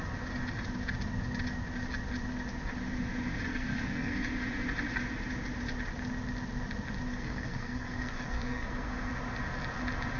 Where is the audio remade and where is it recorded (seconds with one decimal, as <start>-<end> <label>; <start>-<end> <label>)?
0.0-3.5 recorded; 3.5-4.3 remade; 4.3-7.1 recorded; 7.1-9.1 remade; 9.1-10.2 recorded